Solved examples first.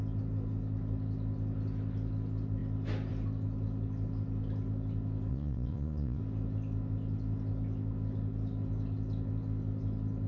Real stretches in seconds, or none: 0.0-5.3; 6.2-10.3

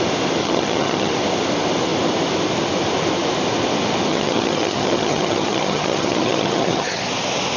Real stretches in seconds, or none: 0.0-0.4; 1.1-4.1; 7.0-7.6